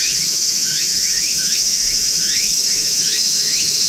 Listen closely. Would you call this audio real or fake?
fake